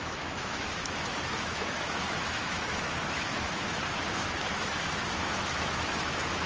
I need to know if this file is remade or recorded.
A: remade